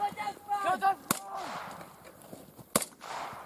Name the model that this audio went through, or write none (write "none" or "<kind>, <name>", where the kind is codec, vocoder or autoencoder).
none